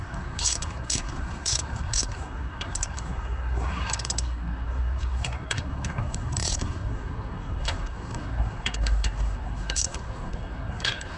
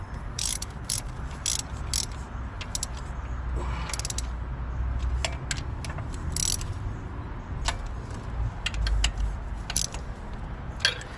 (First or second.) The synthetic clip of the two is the first